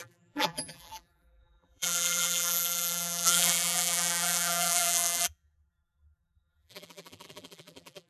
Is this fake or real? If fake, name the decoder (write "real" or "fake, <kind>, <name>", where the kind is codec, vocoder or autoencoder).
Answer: fake, vocoder, BigVGAN v2